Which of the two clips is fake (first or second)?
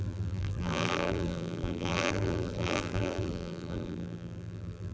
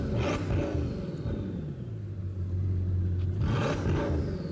first